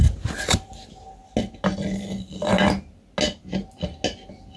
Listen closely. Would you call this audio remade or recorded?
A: recorded